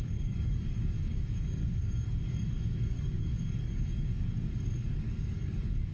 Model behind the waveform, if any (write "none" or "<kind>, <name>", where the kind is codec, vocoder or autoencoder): codec, DAC